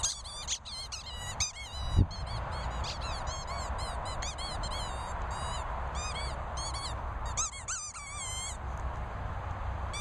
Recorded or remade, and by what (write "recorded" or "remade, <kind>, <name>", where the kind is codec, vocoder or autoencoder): recorded